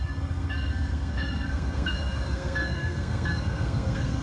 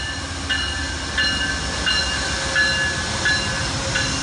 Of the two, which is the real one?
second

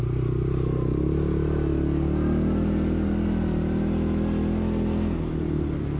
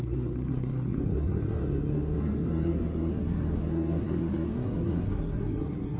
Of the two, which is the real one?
first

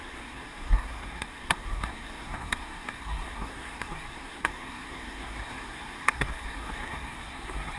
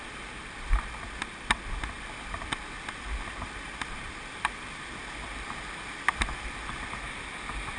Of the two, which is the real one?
second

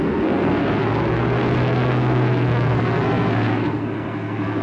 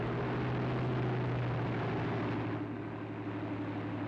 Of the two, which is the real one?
second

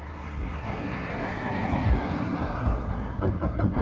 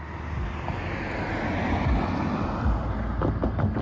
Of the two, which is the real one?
second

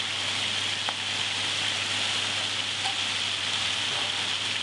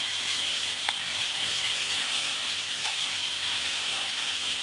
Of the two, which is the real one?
first